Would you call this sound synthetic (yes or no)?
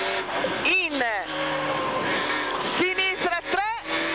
no